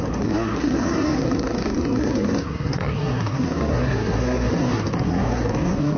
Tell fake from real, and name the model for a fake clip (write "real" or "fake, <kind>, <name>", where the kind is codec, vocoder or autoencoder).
fake, codec, SNAC